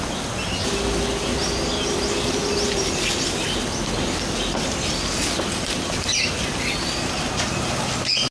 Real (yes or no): yes